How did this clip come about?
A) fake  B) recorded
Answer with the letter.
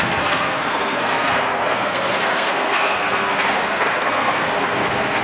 A